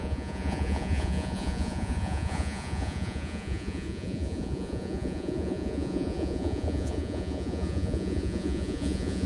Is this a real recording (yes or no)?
no